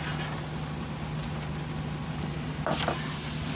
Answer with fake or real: real